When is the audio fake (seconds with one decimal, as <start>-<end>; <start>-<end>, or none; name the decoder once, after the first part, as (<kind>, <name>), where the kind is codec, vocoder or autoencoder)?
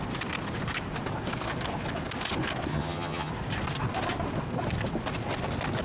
2.7-3.3 (vocoder, HiFi-GAN)